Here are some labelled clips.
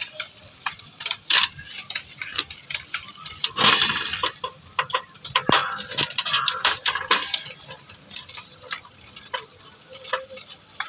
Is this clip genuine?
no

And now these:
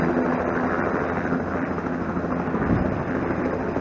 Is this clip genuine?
yes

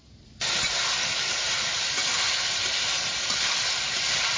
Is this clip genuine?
yes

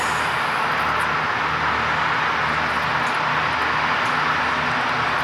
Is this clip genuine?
yes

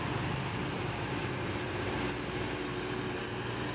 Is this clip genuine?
yes